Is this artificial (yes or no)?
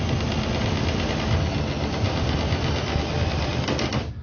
no